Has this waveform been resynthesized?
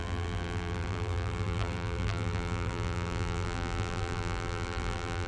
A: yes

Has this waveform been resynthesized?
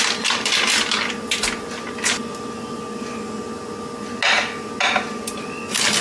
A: no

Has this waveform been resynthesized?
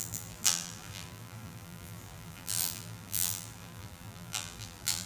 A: yes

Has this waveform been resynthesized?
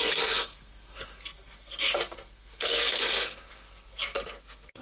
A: yes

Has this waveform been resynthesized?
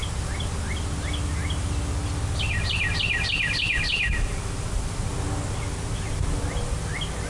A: no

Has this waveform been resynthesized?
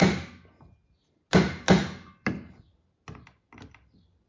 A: no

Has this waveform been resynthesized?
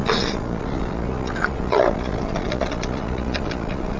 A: yes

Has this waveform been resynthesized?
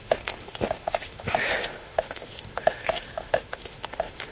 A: yes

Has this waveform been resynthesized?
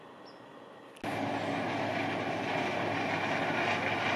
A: no